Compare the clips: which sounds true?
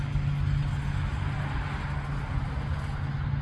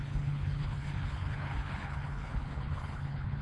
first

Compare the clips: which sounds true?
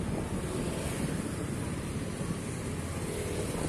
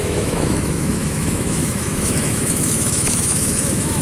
first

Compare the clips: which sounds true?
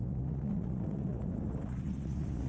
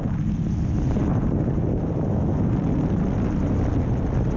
second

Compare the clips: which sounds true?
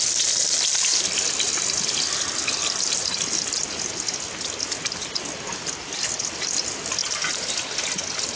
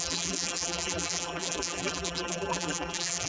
first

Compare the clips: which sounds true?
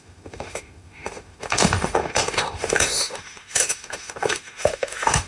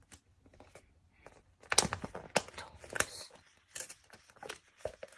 second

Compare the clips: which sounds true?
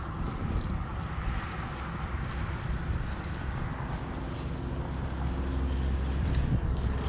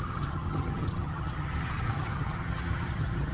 first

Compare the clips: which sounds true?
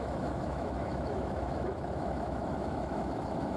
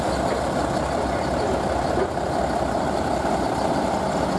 second